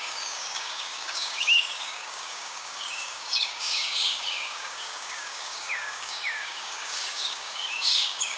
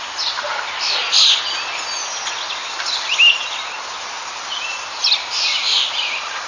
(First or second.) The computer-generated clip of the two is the first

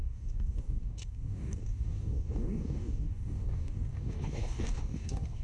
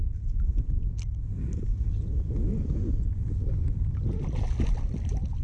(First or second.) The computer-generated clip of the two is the first